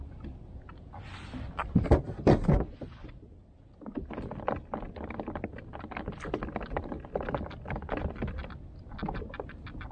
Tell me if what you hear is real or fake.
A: real